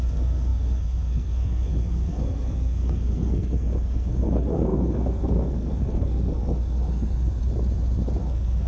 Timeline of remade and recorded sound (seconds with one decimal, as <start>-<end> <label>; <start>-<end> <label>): 0.0-7.4 remade; 7.4-8.2 recorded; 8.2-8.7 remade

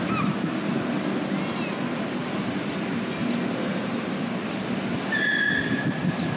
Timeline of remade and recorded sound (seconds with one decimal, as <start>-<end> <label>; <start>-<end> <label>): 0.0-6.4 recorded